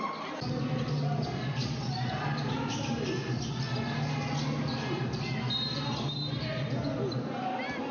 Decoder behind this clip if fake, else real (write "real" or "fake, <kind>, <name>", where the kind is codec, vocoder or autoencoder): real